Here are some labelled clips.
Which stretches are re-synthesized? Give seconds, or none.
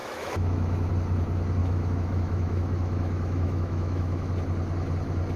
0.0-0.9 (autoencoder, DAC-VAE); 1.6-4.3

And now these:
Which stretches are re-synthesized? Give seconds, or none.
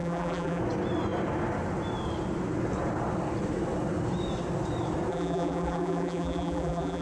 0.0-0.6 (vocoder, BigVGAN v2); 5.1-7.0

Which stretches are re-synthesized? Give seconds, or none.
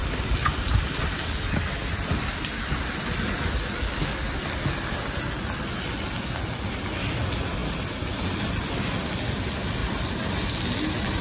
0.0-3.4 (vocoder, BigVGAN v2)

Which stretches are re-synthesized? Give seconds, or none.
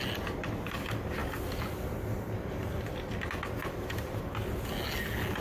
none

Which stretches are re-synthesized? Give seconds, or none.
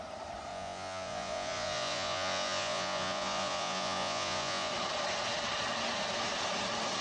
0.5-4.7 (vocoder, Vocos)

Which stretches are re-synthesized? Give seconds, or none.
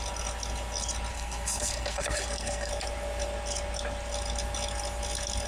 1.1-2.7 (codec, SNAC)